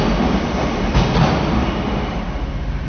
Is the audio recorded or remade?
remade